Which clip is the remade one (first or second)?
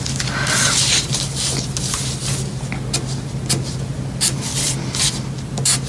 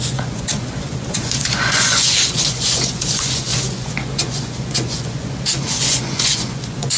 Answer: second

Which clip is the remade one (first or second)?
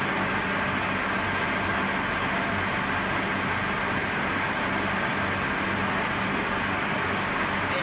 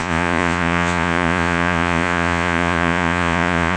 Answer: second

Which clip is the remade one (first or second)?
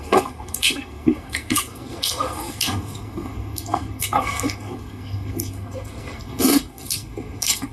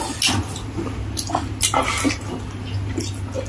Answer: first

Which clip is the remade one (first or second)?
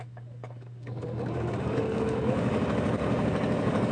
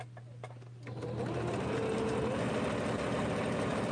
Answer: first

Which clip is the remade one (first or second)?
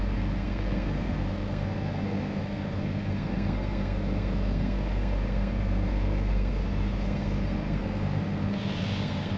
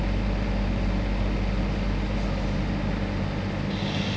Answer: first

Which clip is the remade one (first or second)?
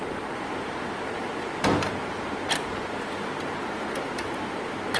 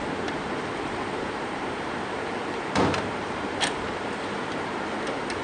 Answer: second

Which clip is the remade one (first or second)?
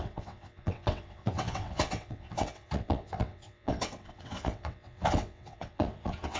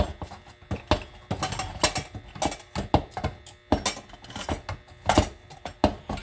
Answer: first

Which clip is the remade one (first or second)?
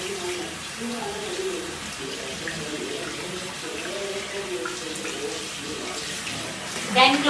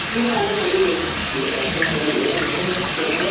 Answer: second